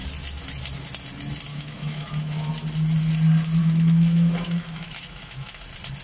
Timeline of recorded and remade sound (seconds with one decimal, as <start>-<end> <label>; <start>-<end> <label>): 0.0-1.5 recorded; 1.5-2.5 remade; 2.5-3.6 recorded; 3.6-5.6 remade; 5.6-6.0 recorded